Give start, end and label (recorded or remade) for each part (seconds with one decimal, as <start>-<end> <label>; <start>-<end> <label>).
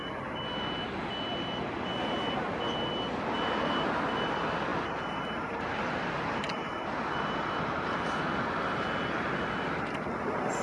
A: 0.0-10.6 recorded